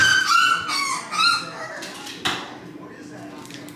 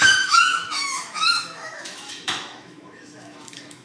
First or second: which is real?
first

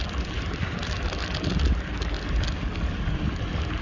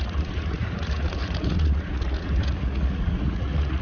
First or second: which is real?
first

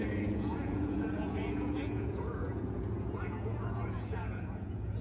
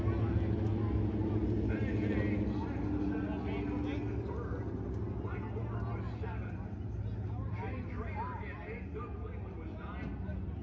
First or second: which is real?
second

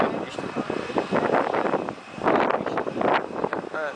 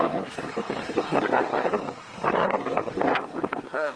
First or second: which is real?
first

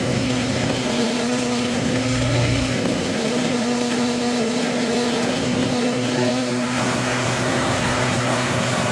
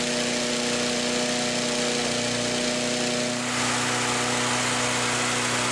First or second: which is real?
second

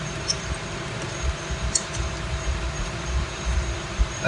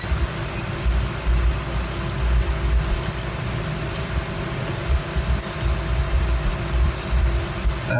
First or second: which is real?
second